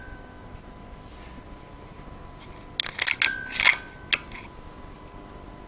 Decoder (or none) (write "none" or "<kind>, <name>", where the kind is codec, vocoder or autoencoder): none